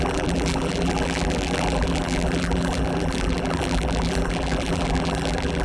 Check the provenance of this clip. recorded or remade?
remade